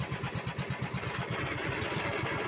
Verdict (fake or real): fake